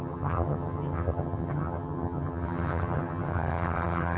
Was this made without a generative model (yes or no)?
no